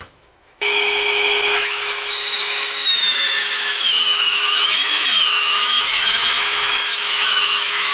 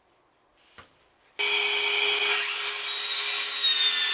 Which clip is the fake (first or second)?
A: first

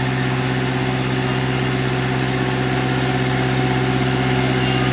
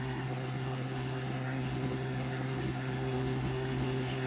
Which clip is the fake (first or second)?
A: second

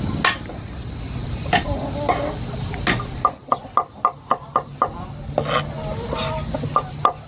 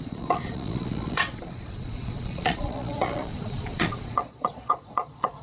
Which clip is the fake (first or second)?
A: second